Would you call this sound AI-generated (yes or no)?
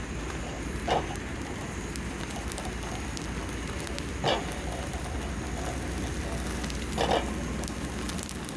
no